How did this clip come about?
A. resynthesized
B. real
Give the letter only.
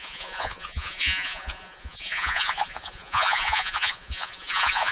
A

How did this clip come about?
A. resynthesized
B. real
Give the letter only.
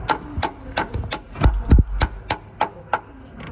B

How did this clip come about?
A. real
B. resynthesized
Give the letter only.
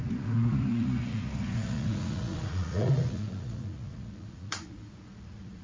B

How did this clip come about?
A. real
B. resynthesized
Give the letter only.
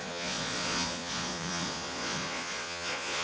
B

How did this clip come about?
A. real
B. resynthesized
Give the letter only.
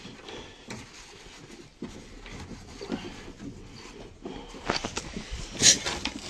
A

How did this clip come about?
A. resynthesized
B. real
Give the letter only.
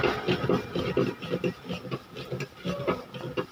B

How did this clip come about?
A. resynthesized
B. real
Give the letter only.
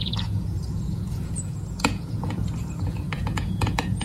A